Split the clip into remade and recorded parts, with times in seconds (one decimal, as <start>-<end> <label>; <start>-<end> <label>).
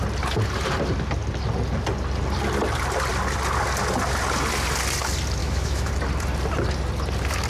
0.0-5.4 recorded; 5.4-5.9 remade; 5.9-7.5 recorded